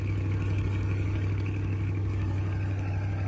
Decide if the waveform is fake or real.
fake